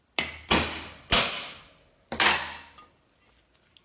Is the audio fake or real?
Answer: real